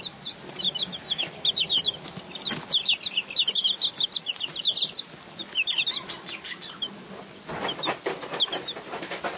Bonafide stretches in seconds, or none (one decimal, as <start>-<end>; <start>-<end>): 0.0-9.4